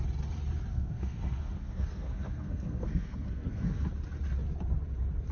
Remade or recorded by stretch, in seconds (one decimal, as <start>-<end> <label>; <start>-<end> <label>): 0.0-0.7 recorded; 0.7-3.9 remade; 3.9-5.3 recorded